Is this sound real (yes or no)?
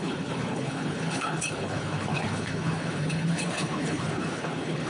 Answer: no